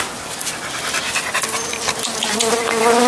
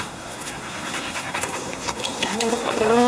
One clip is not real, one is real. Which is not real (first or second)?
second